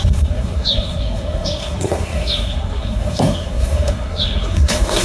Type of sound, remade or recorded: remade